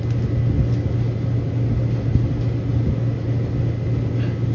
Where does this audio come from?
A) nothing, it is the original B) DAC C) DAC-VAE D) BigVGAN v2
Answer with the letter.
A